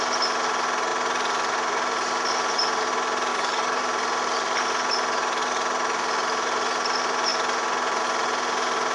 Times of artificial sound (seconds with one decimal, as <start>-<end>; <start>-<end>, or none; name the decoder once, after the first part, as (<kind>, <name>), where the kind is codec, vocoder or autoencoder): 3.3-3.8 (codec, DAC)